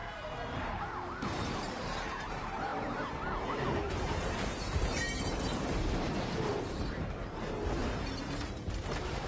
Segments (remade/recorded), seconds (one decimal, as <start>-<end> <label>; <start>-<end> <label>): 0.0-9.3 remade